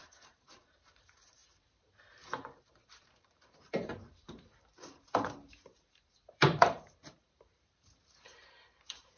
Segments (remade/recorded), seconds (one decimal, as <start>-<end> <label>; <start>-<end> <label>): 0.0-9.2 remade